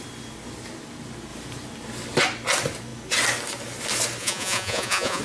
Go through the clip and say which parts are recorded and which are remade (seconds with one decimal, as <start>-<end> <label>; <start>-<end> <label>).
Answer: 0.0-4.2 recorded; 4.2-5.2 remade